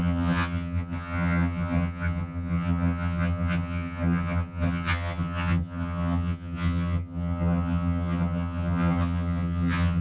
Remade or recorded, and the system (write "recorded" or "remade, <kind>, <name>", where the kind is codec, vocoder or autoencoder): remade, vocoder, HiFi-GAN